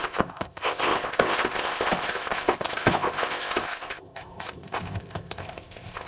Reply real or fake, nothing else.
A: fake